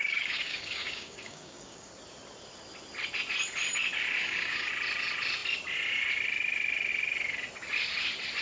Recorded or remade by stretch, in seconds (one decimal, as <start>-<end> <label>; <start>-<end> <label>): 0.0-1.9 remade; 1.9-4.2 recorded; 4.2-4.7 remade; 4.7-8.4 recorded